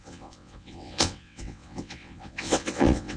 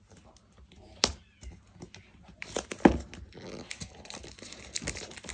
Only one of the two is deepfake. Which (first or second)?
first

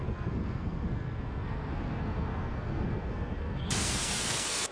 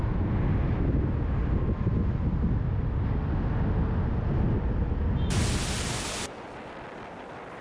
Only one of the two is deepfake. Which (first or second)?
first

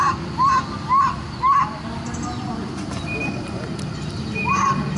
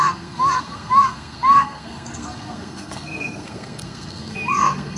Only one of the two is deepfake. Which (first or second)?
second